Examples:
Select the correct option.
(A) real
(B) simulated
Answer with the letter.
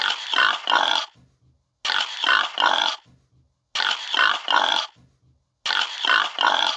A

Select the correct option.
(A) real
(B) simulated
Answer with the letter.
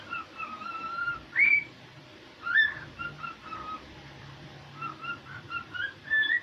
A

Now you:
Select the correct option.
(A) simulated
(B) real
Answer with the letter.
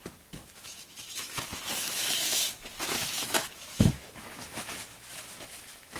A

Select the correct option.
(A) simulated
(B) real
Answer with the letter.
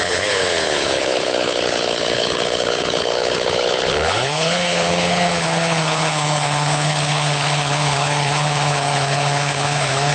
A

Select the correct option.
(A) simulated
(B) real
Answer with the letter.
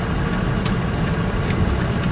B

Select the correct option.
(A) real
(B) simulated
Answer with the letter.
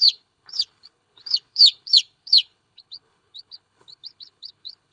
B